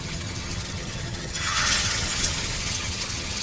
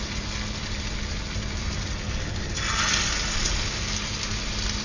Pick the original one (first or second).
second